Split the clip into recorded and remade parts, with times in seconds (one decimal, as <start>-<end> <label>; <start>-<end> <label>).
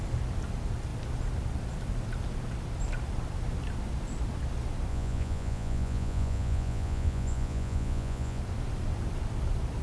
0.0-4.9 recorded; 4.9-8.4 remade; 8.4-9.8 recorded